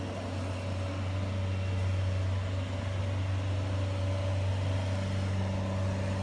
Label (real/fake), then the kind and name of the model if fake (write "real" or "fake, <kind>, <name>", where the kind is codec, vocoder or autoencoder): real